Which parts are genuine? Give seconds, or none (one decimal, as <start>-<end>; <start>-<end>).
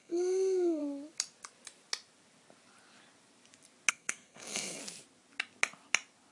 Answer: 0.8-3.9; 4.8-6.3